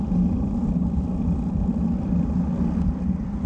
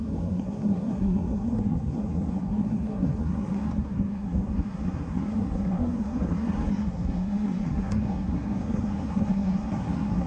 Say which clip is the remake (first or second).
second